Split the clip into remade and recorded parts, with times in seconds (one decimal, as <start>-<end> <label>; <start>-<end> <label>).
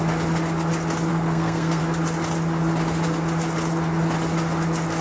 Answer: 0.0-1.1 recorded; 1.1-1.8 remade; 1.8-5.0 recorded